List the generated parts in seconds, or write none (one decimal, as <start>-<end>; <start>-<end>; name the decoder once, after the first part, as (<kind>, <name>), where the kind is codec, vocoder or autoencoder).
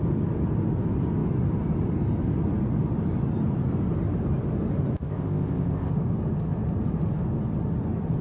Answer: 5.0-5.9 (codec, ZipCodec)